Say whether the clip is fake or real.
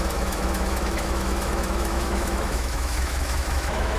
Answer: fake